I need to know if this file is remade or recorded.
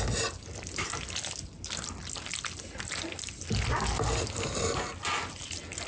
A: recorded